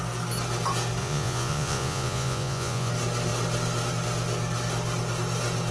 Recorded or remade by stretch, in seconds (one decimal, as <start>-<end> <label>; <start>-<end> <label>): 0.0-1.0 recorded; 1.0-2.9 remade; 2.9-5.7 recorded